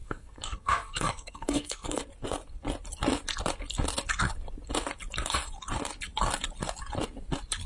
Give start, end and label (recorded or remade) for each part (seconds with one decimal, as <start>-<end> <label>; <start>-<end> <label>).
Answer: 0.0-2.0 remade; 2.0-7.7 recorded